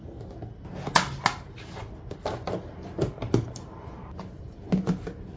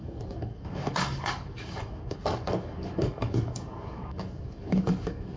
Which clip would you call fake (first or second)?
second